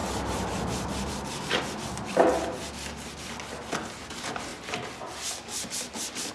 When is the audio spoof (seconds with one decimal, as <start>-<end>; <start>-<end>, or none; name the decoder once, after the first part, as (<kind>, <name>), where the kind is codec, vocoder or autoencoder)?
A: none